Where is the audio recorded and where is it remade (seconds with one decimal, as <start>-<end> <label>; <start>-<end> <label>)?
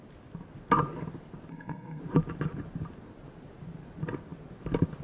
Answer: 0.0-1.5 recorded; 1.5-2.0 remade; 2.0-5.0 recorded